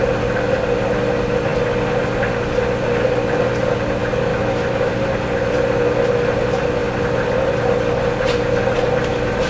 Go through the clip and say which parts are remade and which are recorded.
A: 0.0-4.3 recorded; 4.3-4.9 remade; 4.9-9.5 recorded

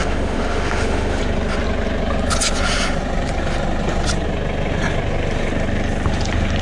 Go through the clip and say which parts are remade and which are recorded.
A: 0.0-1.2 remade; 1.2-6.6 recorded

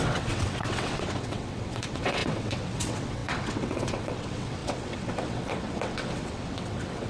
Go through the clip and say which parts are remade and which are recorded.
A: 0.0-7.1 remade